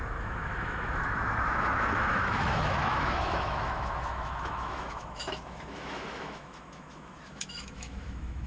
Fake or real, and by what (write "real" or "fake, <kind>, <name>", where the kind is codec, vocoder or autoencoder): fake, autoencoder, DAC-VAE